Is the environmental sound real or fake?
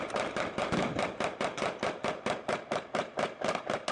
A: real